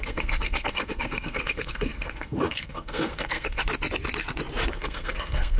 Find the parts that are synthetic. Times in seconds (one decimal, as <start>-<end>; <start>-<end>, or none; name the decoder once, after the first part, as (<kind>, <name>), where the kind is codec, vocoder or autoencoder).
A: 0.0-3.6 (codec, SNAC); 4.7-5.6